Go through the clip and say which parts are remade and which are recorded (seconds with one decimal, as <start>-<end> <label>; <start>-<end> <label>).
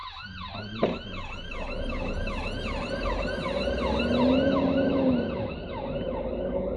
0.0-6.8 recorded